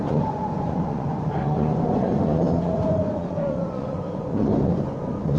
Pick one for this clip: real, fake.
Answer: fake